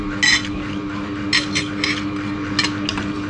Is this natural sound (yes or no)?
yes